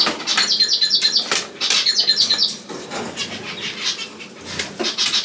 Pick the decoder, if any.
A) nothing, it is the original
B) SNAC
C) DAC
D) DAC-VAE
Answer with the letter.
A